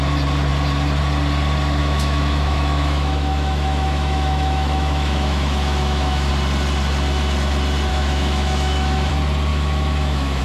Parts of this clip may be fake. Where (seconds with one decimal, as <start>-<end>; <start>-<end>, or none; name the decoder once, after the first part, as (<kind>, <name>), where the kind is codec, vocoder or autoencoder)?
1.8-6.3 (autoencoder, DAC-VAE); 7.9-9.1; 9.5-10.4